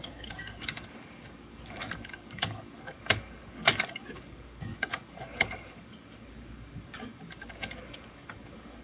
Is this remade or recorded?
remade